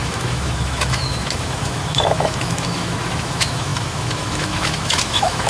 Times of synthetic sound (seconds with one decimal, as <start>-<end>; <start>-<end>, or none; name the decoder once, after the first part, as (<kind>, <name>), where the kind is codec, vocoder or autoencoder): 0.0-5.5 (autoencoder, DAC-VAE)